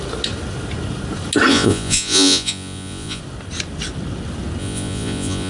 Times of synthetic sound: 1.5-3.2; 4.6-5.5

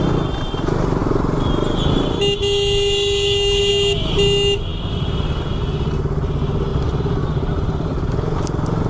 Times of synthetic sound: none

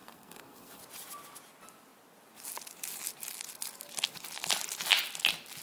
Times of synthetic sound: 0.0-0.8